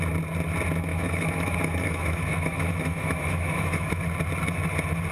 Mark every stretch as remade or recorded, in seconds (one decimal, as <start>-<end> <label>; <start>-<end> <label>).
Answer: 0.0-0.9 recorded; 0.9-4.0 remade; 4.0-5.1 recorded